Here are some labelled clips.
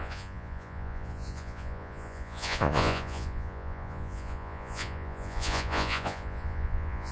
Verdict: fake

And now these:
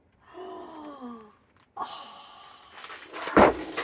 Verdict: real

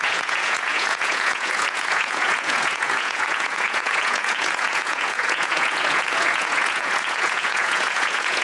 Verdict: fake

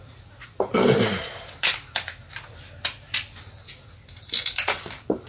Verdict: real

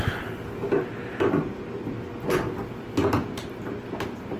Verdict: real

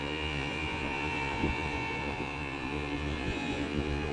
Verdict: fake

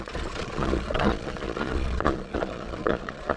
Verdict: fake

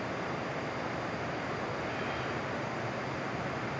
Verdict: real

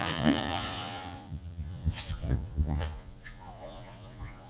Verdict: fake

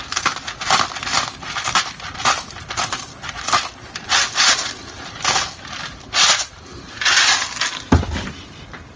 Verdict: real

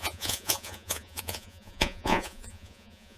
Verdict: fake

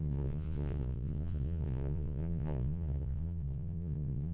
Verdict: fake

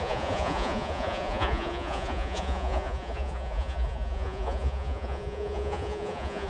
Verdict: fake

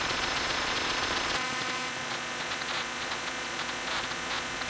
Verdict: fake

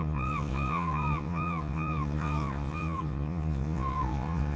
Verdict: fake